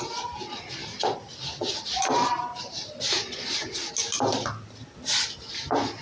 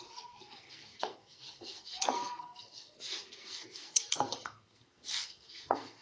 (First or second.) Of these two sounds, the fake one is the second